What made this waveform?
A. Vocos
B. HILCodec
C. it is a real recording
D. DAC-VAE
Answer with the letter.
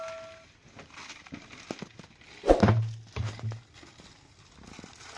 C